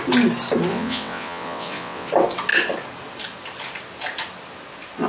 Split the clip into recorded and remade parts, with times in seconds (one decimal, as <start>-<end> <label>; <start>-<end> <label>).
0.0-0.7 recorded; 0.7-2.1 remade; 2.1-5.1 recorded